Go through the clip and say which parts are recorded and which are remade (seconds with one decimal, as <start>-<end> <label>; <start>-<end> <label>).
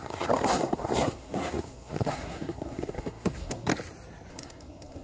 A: 0.0-3.7 remade; 3.7-4.3 recorded; 4.3-5.0 remade